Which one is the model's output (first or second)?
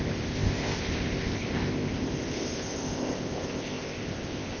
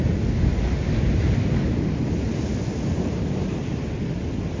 first